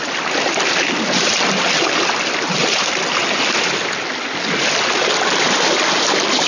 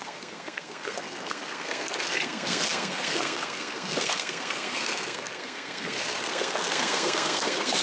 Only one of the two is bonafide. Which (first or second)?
first